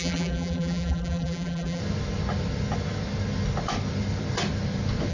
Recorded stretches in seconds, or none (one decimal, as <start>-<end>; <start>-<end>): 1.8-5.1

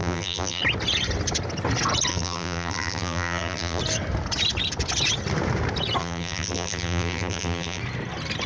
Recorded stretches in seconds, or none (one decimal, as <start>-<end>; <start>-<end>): 0.6-2.1; 3.8-6.0; 7.8-8.5

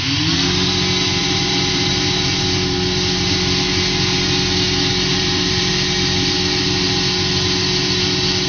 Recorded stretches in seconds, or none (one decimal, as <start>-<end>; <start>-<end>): 0.0-1.2; 1.9-5.1; 5.6-8.5